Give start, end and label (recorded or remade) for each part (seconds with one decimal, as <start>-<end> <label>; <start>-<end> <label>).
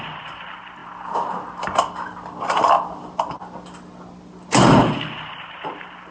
0.0-6.1 recorded